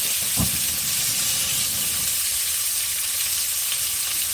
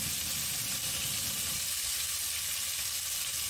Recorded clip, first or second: second